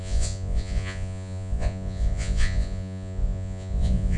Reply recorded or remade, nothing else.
remade